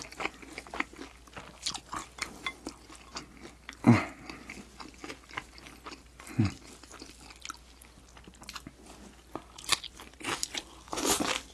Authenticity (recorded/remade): recorded